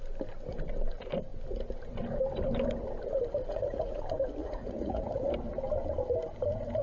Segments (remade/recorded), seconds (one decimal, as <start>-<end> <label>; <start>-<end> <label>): 0.0-3.5 recorded; 3.5-4.0 remade; 4.0-4.4 recorded; 4.4-5.3 remade; 5.3-6.8 recorded